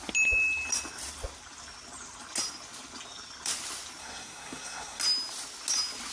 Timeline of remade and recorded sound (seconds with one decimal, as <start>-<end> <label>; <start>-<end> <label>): 0.0-4.0 recorded; 4.0-5.0 remade; 5.0-6.1 recorded